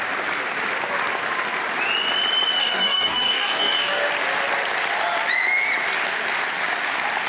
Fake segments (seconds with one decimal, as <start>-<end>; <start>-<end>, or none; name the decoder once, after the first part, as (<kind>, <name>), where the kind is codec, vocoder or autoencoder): 2.6-4.1 (codec, DAC)